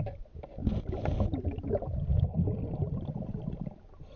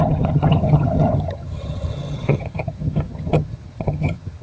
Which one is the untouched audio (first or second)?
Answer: first